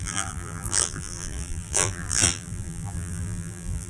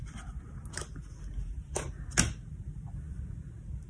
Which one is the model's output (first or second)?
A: first